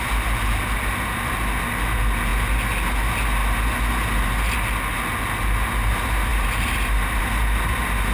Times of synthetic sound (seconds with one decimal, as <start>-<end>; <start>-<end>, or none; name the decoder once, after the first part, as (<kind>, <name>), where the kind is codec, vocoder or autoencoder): none